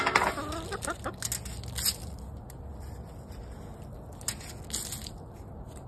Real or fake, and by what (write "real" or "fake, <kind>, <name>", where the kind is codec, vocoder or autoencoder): real